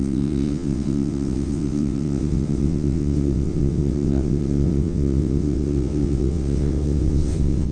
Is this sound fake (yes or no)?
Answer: yes